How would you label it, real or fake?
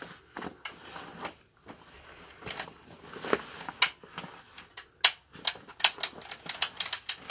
real